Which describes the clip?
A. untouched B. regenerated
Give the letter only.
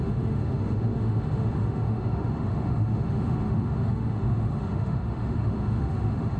B